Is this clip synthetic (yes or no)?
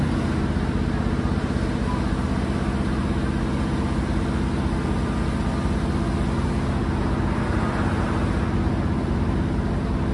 no